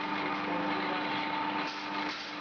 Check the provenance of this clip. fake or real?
real